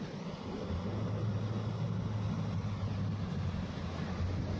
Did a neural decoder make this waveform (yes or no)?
no